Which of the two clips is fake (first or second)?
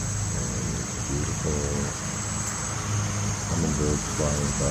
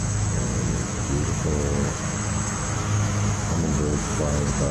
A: second